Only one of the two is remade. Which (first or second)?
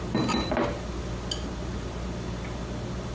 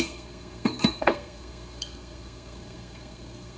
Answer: second